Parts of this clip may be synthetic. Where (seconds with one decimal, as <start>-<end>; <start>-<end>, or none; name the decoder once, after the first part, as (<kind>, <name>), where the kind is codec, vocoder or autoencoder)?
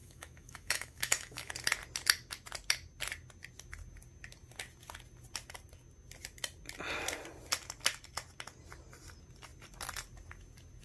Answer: 0.0-1.5 (autoencoder, DAC-VAE)